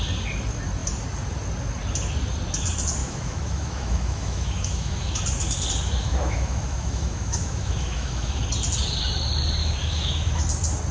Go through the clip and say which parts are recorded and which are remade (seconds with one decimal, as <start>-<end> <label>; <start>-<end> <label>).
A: 0.0-3.0 recorded; 3.0-5.2 remade; 5.2-6.0 recorded; 6.0-8.4 remade; 8.4-9.6 recorded; 9.6-10.4 remade; 10.4-10.9 recorded

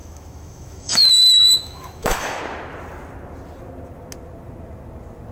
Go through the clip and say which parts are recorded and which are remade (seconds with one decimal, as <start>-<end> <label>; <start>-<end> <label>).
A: 0.0-2.4 remade; 2.4-5.3 recorded

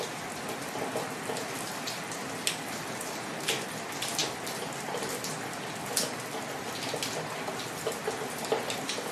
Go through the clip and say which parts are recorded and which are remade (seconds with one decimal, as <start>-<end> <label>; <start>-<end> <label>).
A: 0.0-9.1 recorded

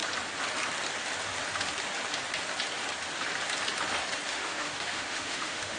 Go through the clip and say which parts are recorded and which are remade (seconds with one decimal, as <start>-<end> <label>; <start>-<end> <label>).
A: 0.0-4.3 recorded; 4.3-5.8 remade

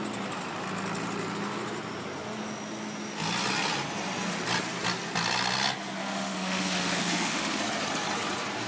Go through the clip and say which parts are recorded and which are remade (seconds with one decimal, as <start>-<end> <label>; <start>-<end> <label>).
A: 0.0-6.0 recorded; 6.0-7.6 remade; 7.6-8.7 recorded